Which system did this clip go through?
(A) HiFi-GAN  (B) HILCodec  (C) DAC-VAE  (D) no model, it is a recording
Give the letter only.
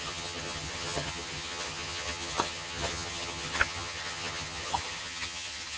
A